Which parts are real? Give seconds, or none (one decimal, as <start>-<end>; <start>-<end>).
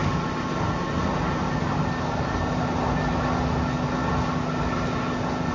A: 0.0-5.5